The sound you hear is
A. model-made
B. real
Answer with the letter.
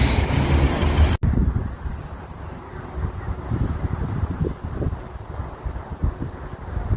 B